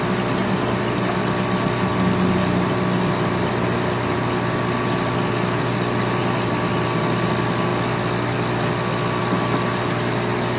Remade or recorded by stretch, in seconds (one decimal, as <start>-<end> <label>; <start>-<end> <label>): 0.0-10.6 recorded